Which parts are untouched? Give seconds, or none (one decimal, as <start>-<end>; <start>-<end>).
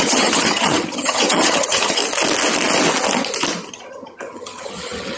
2.0-3.7